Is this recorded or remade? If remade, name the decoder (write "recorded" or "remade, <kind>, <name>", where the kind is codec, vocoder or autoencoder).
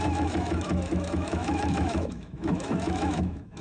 remade, autoencoder, DAC-VAE